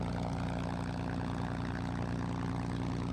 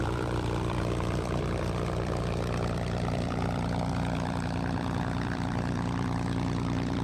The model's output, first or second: second